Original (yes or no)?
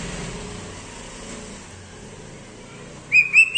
yes